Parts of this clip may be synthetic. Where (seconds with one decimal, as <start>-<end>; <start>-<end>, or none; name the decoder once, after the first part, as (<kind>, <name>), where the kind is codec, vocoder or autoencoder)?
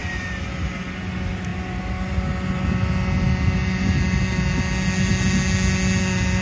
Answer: none